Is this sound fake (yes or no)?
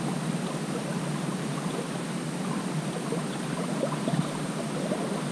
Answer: no